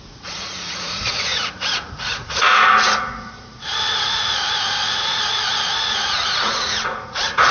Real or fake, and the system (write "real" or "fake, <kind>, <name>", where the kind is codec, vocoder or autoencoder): fake, vocoder, Vocos